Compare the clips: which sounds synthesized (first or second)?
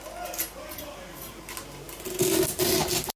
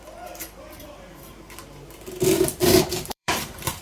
second